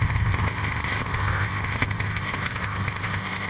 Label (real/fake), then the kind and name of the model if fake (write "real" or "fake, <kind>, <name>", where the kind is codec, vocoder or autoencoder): fake, codec, ZipCodec